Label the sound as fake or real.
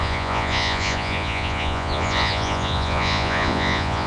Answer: fake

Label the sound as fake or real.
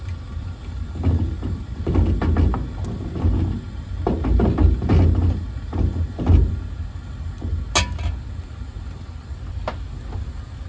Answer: real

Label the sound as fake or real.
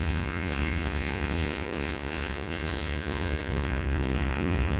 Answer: fake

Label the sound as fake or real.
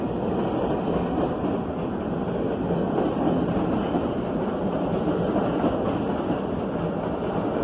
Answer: real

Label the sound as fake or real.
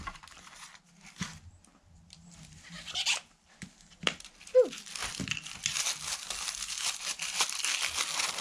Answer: real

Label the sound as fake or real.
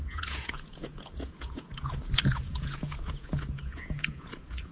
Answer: fake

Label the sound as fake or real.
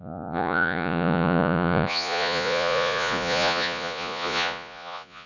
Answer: fake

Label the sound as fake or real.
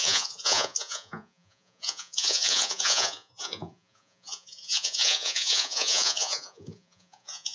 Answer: fake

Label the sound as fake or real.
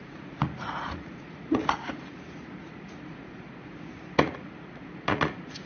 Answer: fake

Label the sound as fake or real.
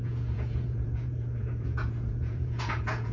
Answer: fake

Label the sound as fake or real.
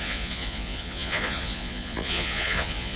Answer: fake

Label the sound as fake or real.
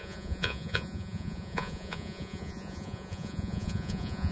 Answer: fake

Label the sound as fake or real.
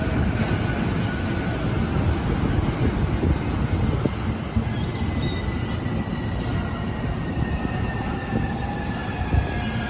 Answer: real